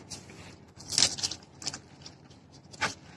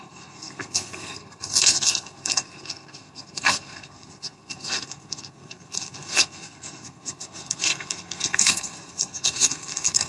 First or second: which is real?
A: first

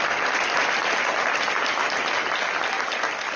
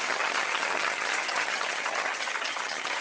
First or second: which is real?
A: first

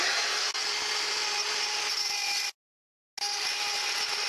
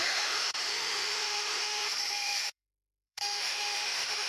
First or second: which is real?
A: first